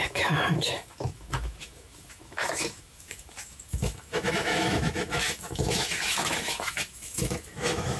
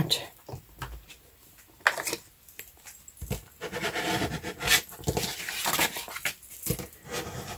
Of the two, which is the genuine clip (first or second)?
second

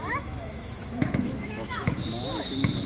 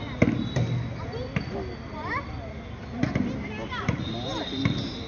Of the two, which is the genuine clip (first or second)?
second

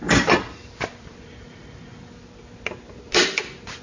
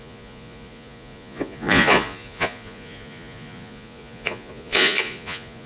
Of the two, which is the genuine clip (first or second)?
first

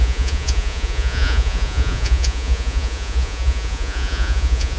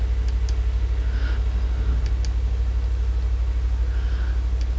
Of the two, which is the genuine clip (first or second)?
second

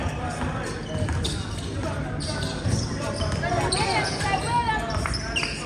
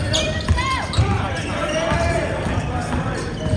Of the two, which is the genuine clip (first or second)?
first